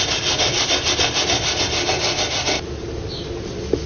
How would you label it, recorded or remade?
recorded